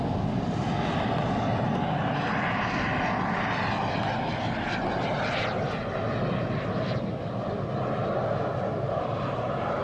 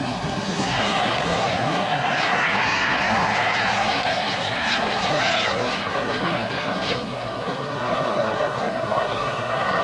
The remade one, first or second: second